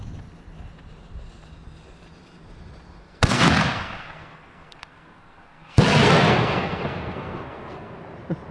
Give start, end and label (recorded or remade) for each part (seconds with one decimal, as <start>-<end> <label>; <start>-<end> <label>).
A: 0.0-3.0 recorded; 3.0-7.9 remade; 7.9-8.5 recorded